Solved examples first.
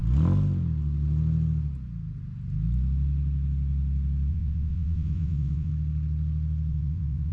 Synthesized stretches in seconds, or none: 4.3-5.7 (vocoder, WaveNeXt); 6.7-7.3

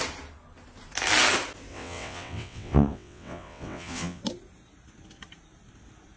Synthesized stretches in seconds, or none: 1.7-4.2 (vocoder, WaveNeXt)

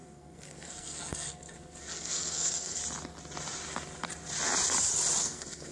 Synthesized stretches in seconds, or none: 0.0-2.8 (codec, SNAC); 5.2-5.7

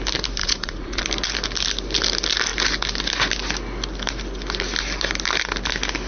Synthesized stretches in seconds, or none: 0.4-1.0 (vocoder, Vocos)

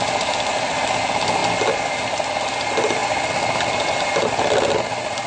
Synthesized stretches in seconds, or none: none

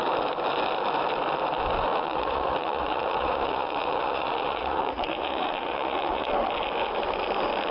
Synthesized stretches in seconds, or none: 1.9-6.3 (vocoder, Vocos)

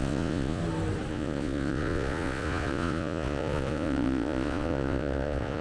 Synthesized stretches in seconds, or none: 0.0-0.6 (vocoder, Vocos); 1.1-5.6